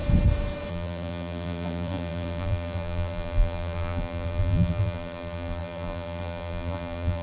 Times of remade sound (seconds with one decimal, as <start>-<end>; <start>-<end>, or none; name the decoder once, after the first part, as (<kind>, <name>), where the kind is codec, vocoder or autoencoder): 0.7-7.2 (vocoder, BigVGAN v2)